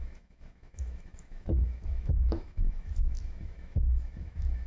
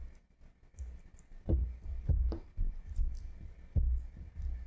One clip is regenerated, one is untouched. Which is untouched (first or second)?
second